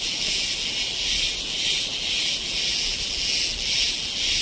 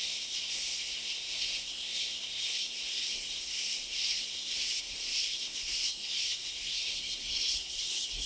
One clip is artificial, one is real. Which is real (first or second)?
first